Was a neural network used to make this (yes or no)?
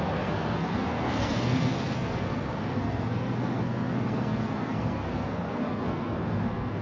yes